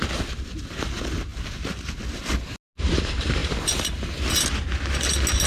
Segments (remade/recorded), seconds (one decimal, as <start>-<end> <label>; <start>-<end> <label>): 0.0-5.5 recorded